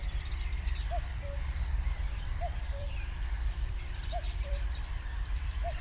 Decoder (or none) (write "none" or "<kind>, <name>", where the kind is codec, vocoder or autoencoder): vocoder, BigVGAN v2